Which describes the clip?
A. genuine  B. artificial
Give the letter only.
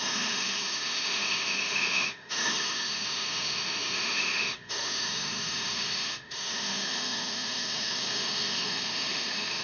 B